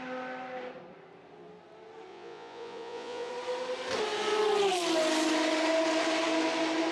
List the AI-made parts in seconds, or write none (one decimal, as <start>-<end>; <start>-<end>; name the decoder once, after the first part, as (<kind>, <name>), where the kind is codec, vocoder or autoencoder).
2.1-3.3 (vocoder, Vocos)